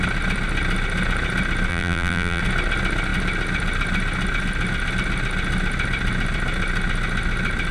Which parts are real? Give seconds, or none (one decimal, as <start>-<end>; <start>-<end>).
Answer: 0.0-1.7; 2.4-7.7